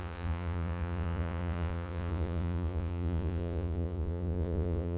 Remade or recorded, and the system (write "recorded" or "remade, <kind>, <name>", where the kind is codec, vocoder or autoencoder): remade, vocoder, Vocos